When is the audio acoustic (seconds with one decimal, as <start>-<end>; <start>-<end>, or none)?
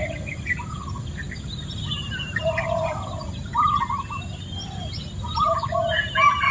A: 0.0-6.5